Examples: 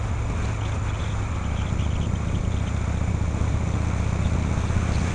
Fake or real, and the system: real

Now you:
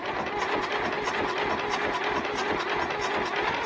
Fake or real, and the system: real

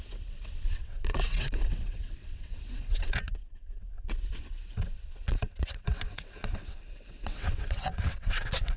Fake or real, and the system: fake, vocoder, WaveNeXt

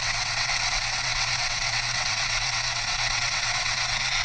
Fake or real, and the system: fake, vocoder, WaveNeXt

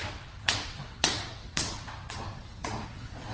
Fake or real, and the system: fake, vocoder, WaveNeXt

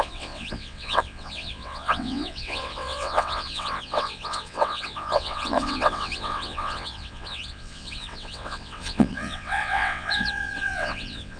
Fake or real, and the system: fake, vocoder, WaveNeXt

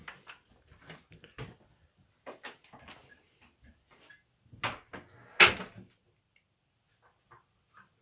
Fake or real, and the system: real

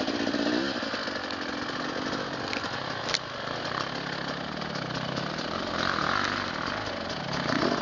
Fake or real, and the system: real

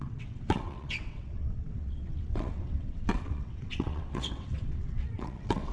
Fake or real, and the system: fake, vocoder, WaveNeXt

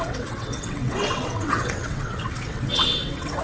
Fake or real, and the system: fake, vocoder, WaveNeXt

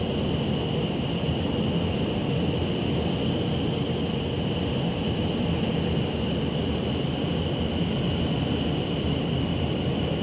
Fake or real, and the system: real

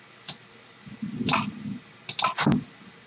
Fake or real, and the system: real